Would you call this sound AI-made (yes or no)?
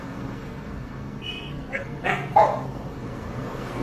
yes